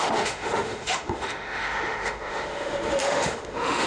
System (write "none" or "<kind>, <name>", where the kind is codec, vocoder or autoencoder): autoencoder, DAC-VAE